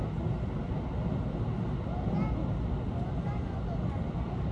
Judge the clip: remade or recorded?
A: recorded